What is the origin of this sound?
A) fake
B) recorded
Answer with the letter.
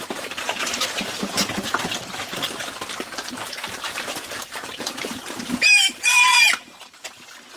A